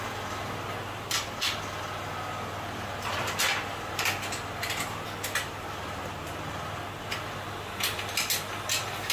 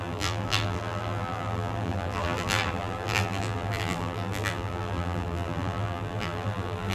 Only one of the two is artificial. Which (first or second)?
second